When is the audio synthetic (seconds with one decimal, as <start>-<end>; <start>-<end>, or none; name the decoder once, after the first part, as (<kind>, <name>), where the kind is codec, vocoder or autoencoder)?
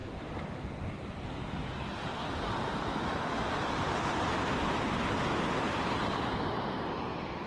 none